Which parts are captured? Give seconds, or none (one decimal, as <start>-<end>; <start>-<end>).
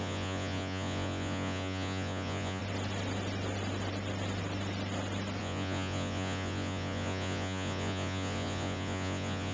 2.6-5.4